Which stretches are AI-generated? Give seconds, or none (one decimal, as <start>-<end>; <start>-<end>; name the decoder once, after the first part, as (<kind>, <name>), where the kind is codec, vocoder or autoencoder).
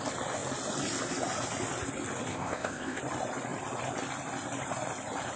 2.3-3.0 (codec, ZipCodec)